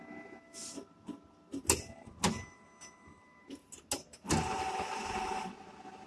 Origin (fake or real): real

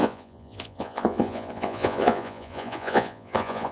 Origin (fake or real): fake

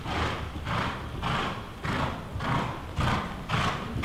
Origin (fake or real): real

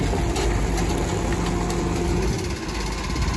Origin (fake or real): real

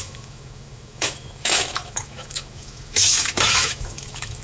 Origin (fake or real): fake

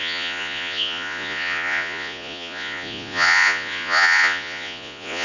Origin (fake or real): fake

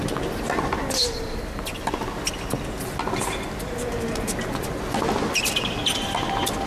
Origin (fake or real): real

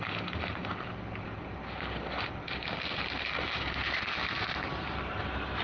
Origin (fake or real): real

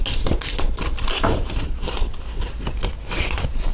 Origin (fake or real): real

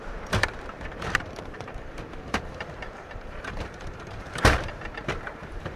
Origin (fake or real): fake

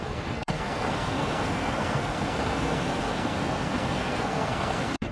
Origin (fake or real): fake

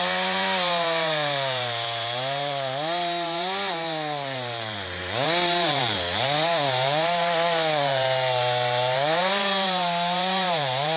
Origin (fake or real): fake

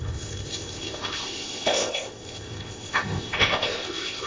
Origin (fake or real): fake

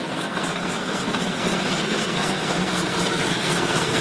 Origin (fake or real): fake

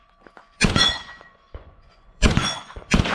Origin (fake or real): fake